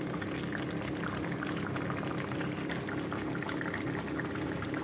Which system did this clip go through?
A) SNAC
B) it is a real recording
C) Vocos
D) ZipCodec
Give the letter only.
B